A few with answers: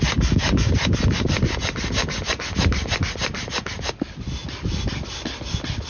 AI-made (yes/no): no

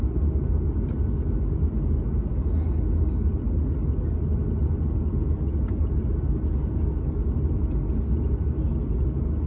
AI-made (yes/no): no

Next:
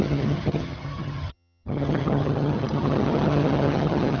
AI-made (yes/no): yes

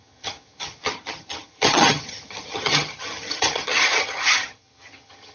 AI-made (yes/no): yes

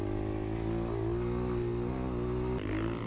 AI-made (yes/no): no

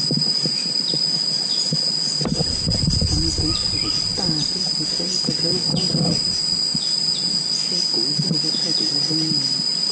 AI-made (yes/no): no